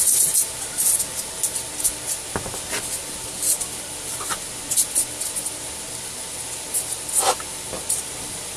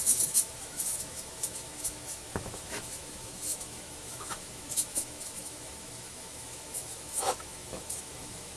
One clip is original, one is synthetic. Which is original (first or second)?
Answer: first